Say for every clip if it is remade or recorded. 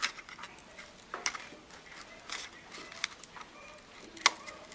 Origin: recorded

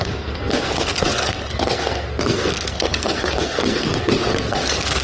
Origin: remade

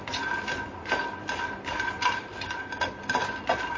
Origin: recorded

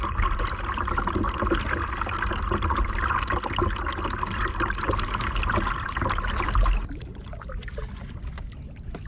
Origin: recorded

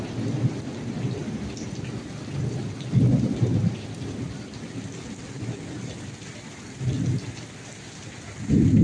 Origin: recorded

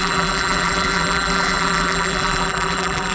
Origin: remade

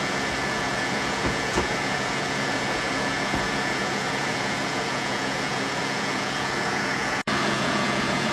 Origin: remade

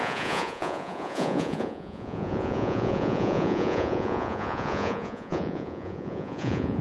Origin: remade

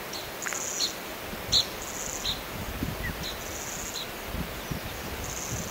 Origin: recorded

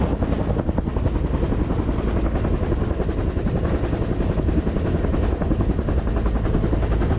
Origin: recorded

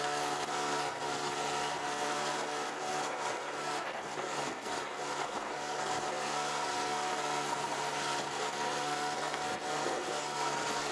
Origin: remade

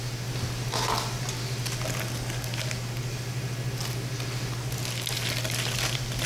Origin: recorded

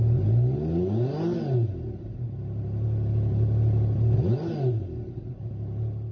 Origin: recorded